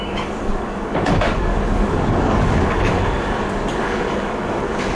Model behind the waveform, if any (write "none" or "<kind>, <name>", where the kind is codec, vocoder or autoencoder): codec, DAC